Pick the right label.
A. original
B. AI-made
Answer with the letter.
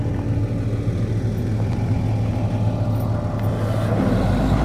A